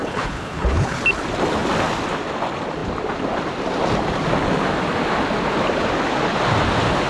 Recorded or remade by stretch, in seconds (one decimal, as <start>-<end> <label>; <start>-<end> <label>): 0.0-1.0 remade; 1.0-7.1 recorded